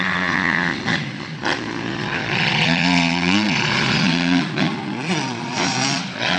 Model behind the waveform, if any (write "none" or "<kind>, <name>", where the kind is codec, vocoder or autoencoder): vocoder, Vocos